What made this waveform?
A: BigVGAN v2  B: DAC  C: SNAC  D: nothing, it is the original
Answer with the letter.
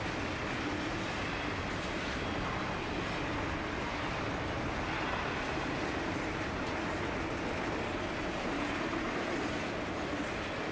D